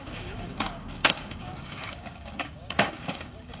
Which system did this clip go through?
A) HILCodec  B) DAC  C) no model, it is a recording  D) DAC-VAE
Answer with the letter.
B